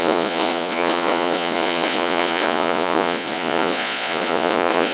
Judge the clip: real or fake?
fake